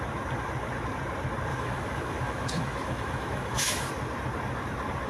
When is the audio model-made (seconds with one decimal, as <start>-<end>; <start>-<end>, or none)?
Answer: 1.5-3.9